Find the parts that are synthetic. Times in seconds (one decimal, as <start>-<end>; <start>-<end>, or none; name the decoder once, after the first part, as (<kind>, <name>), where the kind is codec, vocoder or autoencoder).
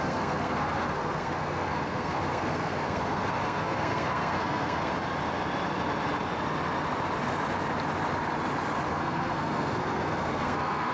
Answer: 0.0-4.9 (codec, SNAC); 8.9-10.9